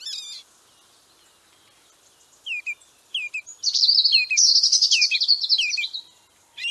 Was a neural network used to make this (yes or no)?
no